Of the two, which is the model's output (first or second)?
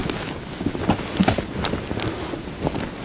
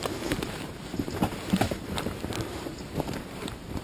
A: second